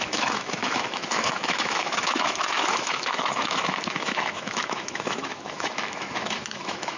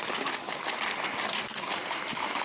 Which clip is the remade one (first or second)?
first